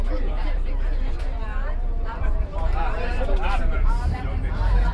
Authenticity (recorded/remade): remade